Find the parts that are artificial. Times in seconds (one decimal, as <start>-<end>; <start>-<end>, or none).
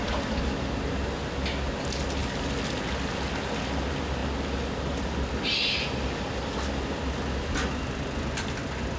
none